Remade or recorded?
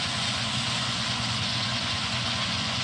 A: remade